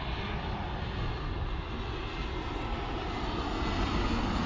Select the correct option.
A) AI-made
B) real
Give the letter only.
B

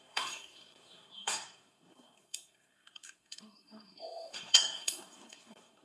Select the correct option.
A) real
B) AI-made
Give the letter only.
B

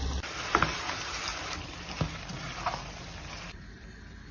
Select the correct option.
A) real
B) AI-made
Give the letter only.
B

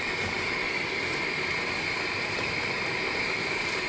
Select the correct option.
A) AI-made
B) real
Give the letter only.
A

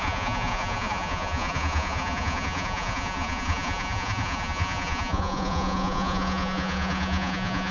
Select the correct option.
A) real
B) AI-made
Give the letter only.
B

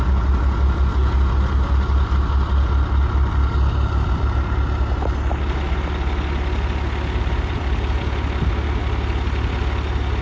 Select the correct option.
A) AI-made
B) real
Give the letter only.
B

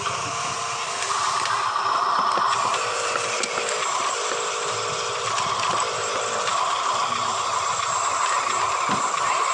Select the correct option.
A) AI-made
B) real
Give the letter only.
B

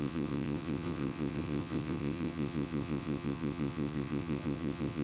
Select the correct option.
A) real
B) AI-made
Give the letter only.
B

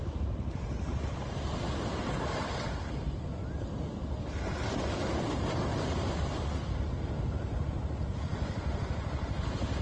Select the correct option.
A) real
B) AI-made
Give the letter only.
A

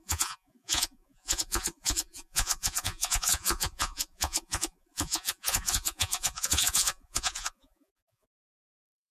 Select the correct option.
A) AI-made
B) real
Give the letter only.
A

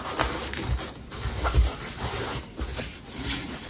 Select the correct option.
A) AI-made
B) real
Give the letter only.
B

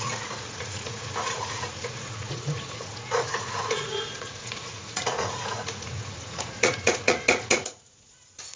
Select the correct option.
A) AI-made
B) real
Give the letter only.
A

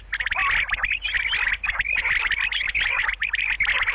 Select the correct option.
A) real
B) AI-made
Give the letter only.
A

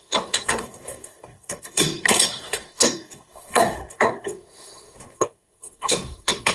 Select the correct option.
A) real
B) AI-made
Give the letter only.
B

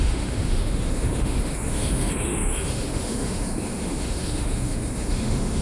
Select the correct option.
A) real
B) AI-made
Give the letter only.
B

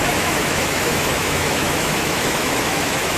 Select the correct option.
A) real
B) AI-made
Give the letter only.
B